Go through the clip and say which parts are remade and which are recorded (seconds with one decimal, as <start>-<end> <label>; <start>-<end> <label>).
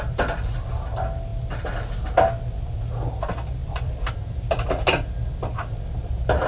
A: 0.0-3.6 recorded; 3.6-4.1 remade; 4.1-6.5 recorded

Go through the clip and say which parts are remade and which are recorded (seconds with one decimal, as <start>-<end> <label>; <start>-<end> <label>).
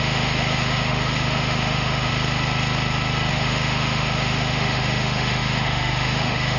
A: 0.0-2.1 remade; 2.1-3.3 recorded; 3.3-6.6 remade